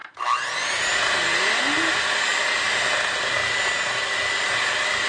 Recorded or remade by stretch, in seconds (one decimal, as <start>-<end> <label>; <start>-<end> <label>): 0.0-5.1 recorded